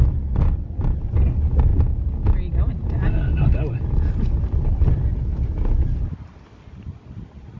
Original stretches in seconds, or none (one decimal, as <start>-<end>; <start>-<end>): 0.0-7.6

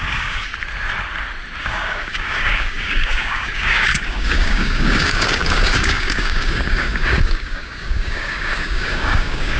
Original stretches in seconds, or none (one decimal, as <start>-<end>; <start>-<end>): 0.5-1.6

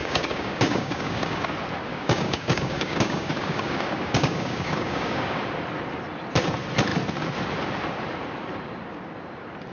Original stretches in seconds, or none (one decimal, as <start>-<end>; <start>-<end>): 1.5-1.9; 5.4-9.7

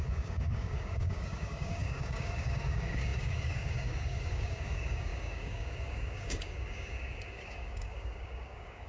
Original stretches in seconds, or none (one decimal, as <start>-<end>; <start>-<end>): none

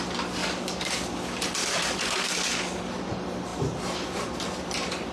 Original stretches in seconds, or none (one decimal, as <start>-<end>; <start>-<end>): 0.0-0.4; 0.9-1.6; 2.8-5.1

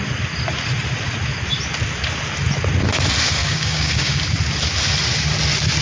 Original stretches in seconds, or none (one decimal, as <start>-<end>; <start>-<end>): 0.0-3.4; 4.2-5.8

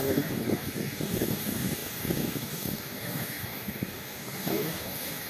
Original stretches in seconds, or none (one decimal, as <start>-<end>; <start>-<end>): none

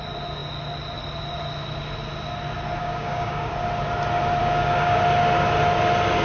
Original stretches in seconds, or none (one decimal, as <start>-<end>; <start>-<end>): 0.0-2.8; 3.5-4.4; 5.0-6.2